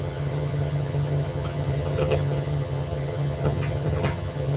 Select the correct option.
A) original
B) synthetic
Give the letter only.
B